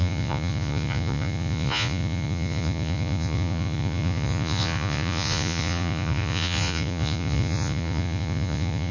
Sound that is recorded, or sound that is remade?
remade